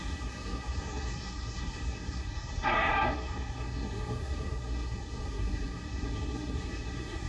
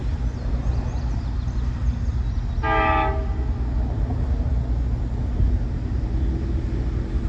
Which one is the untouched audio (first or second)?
second